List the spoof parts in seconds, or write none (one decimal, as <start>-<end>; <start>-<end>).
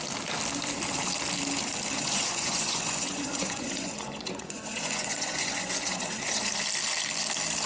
1.9-6.5